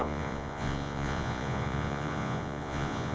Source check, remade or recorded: remade